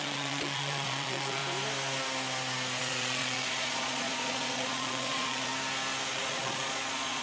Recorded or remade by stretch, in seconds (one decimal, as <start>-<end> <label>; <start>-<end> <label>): 0.0-1.4 remade; 1.4-2.8 recorded; 2.8-5.5 remade; 5.5-6.1 recorded; 6.1-7.2 remade